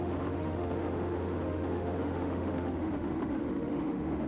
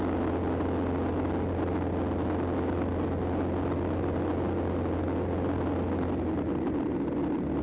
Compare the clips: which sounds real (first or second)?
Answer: second